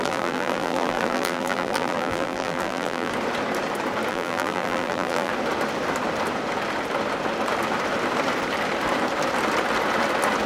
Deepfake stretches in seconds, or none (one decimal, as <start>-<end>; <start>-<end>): 0.0-3.1; 4.1-5.3